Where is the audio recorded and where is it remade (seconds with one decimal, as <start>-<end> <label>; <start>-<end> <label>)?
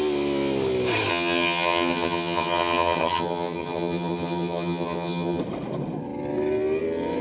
0.0-1.1 recorded; 1.1-5.4 remade; 5.4-7.2 recorded